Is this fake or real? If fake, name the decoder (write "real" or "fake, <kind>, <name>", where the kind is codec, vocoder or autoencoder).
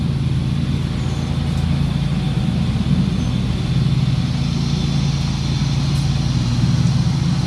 real